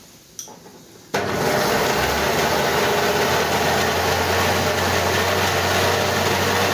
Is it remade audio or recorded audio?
recorded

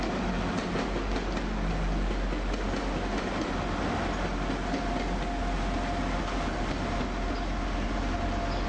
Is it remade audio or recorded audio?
recorded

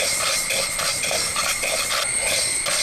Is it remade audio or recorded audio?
recorded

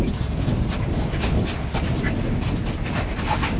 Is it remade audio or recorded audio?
recorded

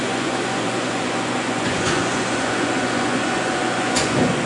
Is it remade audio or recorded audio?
remade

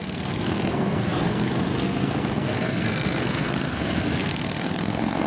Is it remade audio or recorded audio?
remade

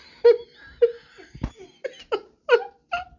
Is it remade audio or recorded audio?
recorded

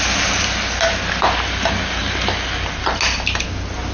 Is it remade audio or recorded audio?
recorded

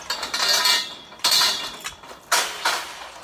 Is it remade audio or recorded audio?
recorded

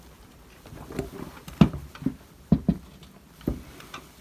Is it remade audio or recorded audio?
recorded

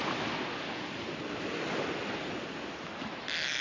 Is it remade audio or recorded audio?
remade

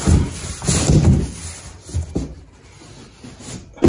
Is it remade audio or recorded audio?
recorded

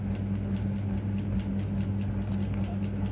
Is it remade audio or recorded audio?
recorded